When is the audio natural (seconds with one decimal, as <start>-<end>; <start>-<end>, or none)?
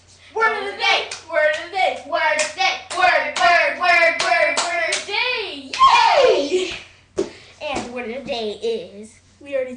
0.0-8.7; 9.3-9.8